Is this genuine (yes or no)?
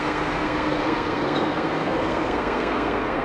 no